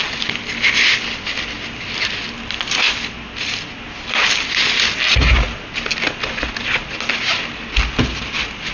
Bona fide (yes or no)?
yes